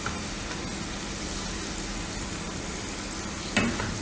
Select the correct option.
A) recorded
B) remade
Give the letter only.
A